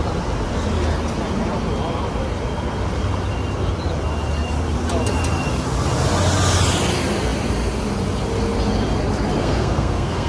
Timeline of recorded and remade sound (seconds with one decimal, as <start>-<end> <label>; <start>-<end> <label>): 0.0-9.4 recorded; 9.4-10.3 remade